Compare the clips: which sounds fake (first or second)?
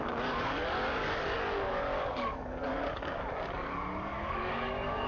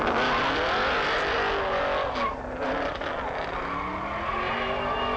first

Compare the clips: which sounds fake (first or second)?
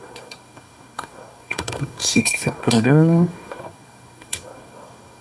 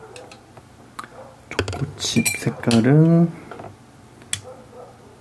first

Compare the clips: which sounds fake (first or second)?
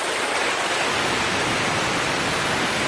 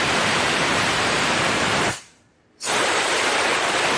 second